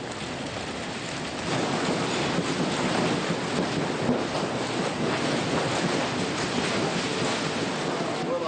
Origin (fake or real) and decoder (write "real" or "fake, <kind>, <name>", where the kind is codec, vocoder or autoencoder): real